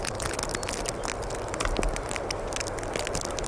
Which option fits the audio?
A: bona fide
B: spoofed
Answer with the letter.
A